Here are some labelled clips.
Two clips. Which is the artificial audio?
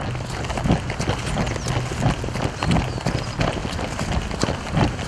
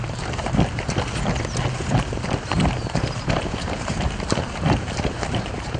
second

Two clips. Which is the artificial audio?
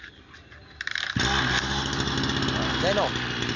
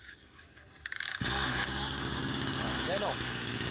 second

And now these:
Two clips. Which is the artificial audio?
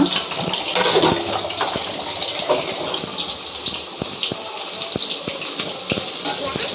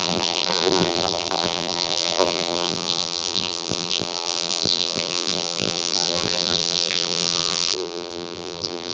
second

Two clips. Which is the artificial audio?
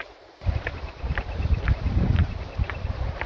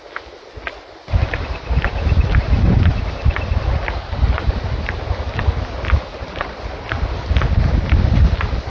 first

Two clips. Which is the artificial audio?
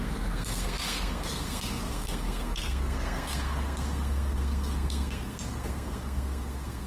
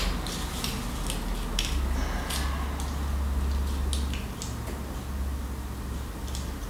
first